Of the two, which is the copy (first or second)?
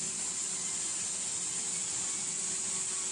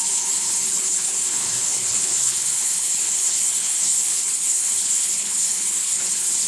second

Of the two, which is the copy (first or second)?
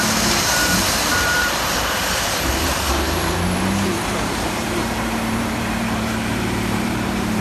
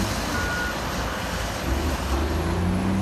first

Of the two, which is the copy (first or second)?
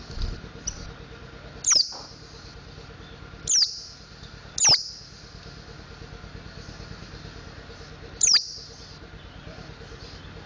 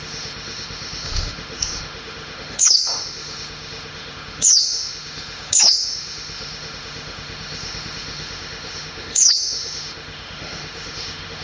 second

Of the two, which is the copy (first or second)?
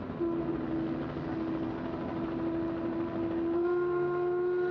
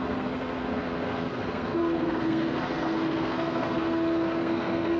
second